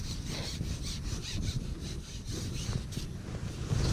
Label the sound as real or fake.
real